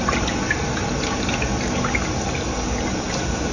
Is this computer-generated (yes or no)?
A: no